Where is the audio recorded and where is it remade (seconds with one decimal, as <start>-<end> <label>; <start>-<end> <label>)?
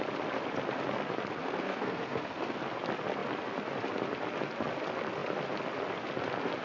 0.0-1.4 recorded; 1.4-2.6 remade; 2.6-6.6 recorded